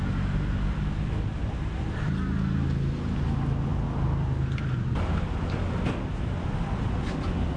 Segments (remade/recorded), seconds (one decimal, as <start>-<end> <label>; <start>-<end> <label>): 0.0-7.6 recorded